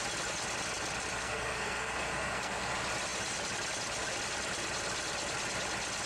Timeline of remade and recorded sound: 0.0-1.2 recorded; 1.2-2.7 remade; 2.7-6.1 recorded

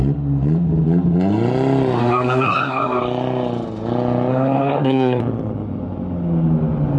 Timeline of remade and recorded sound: 0.0-2.0 recorded; 2.0-3.0 remade; 3.0-4.3 recorded; 4.3-5.2 remade; 5.2-7.0 recorded

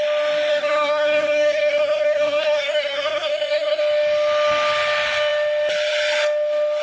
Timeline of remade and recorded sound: 0.0-0.5 recorded; 0.5-3.8 remade; 3.8-6.8 recorded

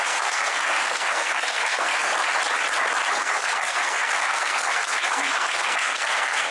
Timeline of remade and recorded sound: 0.0-2.1 remade; 2.1-3.1 recorded; 3.1-6.5 remade